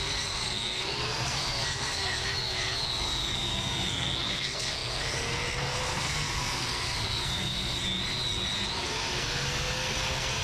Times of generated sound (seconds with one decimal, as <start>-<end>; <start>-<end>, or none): 0.0-7.8; 8.8-10.4